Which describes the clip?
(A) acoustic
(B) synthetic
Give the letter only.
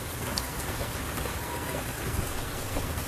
B